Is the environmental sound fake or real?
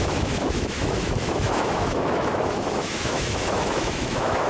fake